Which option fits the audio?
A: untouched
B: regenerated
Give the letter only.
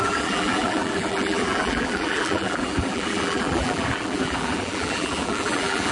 B